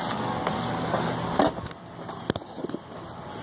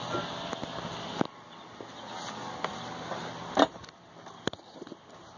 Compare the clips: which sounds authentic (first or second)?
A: first